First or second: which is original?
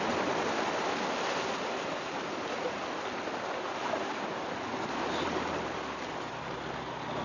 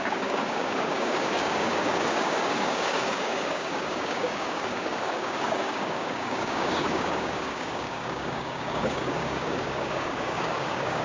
first